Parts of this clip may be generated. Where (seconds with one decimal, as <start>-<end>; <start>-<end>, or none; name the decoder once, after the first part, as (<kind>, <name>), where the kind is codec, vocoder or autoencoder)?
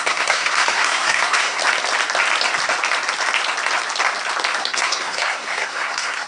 0.0-1.6 (codec, SNAC); 4.6-6.3